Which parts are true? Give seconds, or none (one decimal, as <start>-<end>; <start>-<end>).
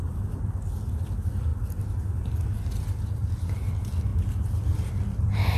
0.0-5.6